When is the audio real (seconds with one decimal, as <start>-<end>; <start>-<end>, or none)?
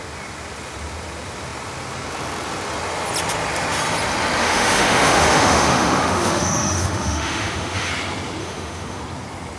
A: 0.0-4.4; 7.9-8.4; 9.0-9.6